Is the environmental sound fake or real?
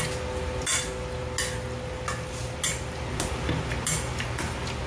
real